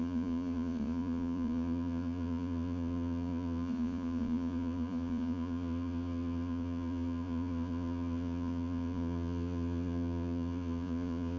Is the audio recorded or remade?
remade